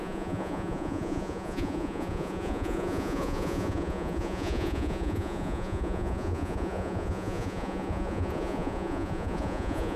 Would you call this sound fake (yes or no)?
yes